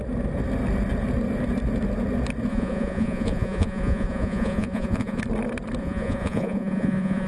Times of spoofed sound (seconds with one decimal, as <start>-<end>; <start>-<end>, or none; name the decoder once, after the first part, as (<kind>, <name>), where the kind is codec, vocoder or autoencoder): 2.5-5.2 (vocoder, Vocos); 5.8-7.3